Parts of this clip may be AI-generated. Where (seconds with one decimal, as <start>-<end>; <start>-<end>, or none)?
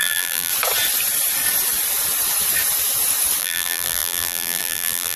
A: 0.0-0.5; 3.4-5.2